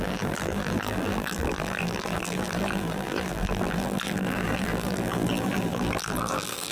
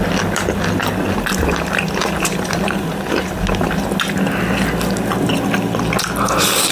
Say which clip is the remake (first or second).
first